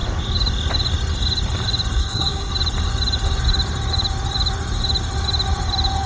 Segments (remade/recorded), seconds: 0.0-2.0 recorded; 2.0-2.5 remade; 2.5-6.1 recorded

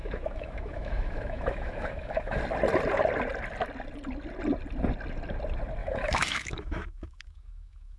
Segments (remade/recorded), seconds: 0.0-2.4 remade; 2.4-5.8 recorded; 5.8-8.0 remade

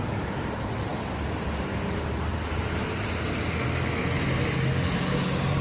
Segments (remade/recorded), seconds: 0.0-5.6 recorded

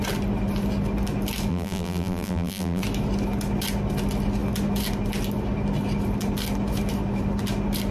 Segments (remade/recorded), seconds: 0.0-1.5 recorded; 1.5-2.8 remade; 2.8-7.9 recorded

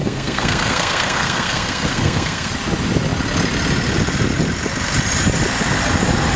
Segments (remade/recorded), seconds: 0.0-2.5 remade; 2.5-6.4 recorded